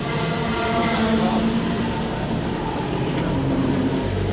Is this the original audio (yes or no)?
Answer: no